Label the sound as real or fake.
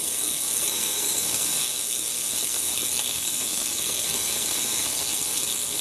fake